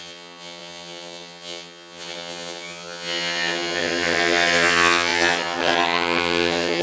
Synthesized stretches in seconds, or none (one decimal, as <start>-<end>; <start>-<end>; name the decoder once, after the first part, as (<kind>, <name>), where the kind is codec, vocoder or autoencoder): 0.0-6.8 (vocoder, HiFi-GAN)